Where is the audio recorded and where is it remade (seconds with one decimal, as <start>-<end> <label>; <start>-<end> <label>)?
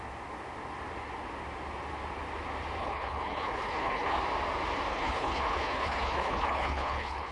0.0-2.8 recorded; 2.8-4.2 remade; 4.2-4.9 recorded; 4.9-7.3 remade